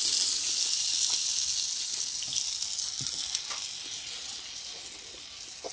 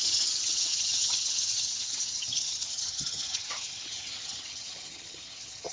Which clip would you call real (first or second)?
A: first